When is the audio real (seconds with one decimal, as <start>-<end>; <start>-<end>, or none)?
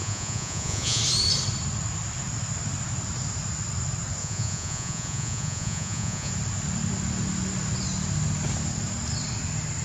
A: 1.0-4.2; 6.3-9.8